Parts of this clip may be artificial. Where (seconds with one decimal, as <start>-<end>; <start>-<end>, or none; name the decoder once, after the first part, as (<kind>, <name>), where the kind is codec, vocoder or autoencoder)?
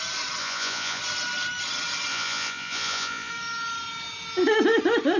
0.4-1.0 (vocoder, Vocos); 2.1-3.3